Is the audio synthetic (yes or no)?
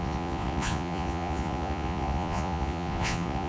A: yes